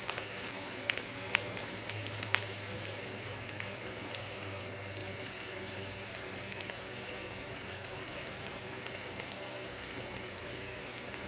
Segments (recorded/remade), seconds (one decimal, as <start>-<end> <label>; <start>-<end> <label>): 0.0-11.3 remade